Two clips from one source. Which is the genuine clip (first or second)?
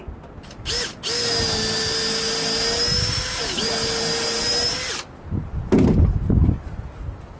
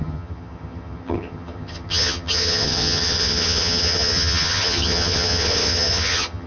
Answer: first